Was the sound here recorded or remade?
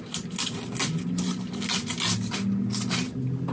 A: recorded